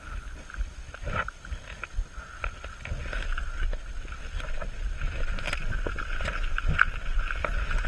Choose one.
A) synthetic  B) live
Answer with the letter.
B